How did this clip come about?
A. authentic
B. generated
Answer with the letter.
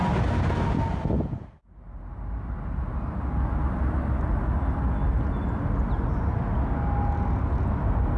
A